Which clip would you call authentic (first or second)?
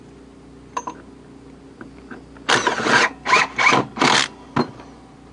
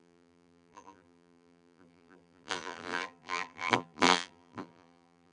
first